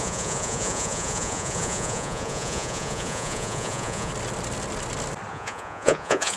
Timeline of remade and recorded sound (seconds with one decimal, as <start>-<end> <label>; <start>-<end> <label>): 0.0-4.1 remade; 4.1-5.3 recorded; 5.3-6.4 remade